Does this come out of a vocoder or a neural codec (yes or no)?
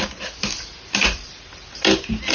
no